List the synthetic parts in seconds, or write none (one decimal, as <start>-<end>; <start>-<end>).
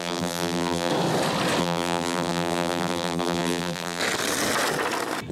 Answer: 0.0-0.9; 1.6-4.0